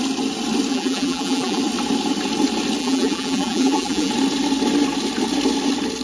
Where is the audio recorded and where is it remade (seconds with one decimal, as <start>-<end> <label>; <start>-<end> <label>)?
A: 0.0-0.7 recorded; 0.7-1.6 remade; 1.6-2.8 recorded; 2.8-4.1 remade; 4.1-6.0 recorded